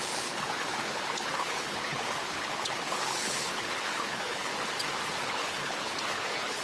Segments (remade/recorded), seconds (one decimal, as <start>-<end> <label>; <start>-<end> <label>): 0.0-4.5 remade; 4.5-5.2 recorded; 5.2-6.6 remade